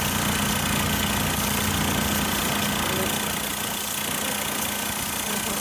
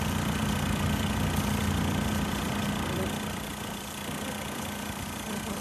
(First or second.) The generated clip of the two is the second